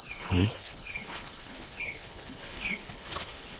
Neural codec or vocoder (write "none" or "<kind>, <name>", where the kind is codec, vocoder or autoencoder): codec, HILCodec